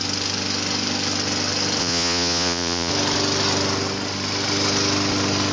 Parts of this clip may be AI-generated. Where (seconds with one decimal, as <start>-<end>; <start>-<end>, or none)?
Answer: 1.8-2.9